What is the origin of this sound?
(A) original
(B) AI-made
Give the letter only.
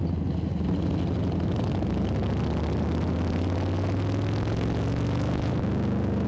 A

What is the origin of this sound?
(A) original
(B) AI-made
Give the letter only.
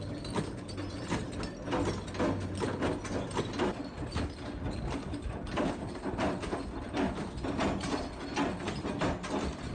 A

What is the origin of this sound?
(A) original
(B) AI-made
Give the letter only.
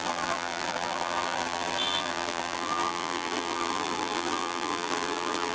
B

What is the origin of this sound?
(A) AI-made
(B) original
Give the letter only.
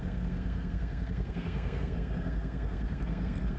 A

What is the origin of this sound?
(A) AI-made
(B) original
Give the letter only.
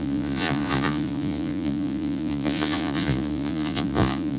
A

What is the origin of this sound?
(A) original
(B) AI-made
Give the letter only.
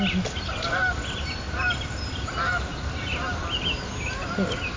A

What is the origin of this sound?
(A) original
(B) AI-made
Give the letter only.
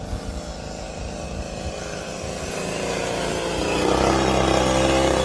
A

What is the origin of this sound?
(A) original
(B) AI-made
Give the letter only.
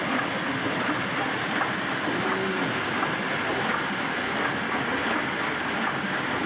A